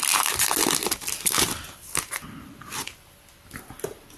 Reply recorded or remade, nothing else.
recorded